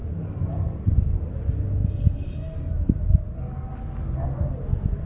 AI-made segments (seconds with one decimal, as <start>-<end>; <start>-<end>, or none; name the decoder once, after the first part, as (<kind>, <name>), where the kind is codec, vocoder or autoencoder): none